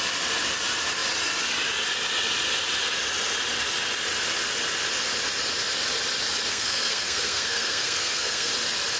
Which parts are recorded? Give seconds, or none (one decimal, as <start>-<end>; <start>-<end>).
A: 0.0-6.5; 8.5-9.0